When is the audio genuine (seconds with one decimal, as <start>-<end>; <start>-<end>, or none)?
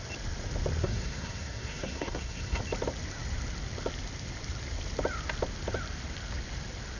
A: 0.0-0.8; 2.6-7.0